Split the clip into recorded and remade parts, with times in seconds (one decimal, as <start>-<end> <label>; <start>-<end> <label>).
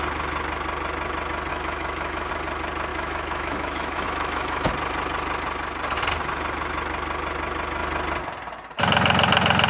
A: 0.0-1.5 recorded; 1.5-2.3 remade; 2.3-2.9 recorded; 2.9-4.7 remade; 4.7-9.7 recorded